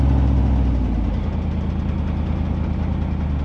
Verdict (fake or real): real